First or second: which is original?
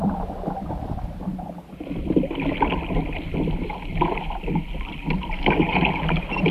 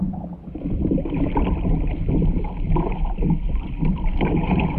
first